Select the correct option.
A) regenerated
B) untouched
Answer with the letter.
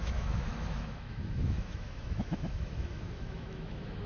A